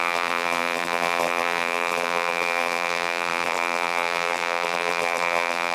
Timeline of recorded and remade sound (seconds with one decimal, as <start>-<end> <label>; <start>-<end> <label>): 0.0-5.7 remade